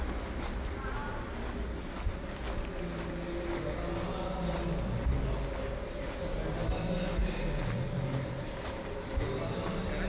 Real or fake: real